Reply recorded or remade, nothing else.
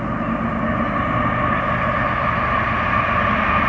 recorded